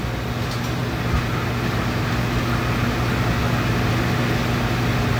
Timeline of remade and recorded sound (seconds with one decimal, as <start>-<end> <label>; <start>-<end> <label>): 0.0-5.2 recorded

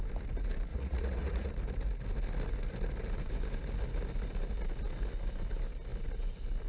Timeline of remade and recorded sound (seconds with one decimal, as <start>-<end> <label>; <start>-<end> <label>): 0.0-0.7 recorded; 0.7-1.5 remade; 1.5-6.7 recorded

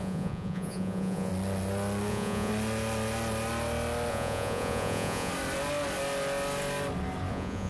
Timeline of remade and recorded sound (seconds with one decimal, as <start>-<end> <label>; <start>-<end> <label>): 0.0-1.3 remade; 1.3-2.1 recorded; 2.1-2.5 remade; 2.5-4.1 recorded; 4.1-5.3 remade; 5.3-7.3 recorded; 7.3-7.7 remade

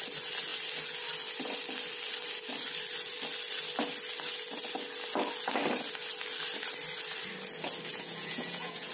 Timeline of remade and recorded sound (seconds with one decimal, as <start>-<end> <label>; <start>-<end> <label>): 0.0-7.9 recorded; 7.9-8.9 remade

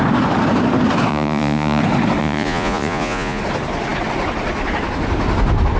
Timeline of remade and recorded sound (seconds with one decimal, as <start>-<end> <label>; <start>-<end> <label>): 0.0-1.1 recorded; 1.1-1.8 remade; 1.8-2.2 recorded; 2.2-3.4 remade; 3.4-5.8 recorded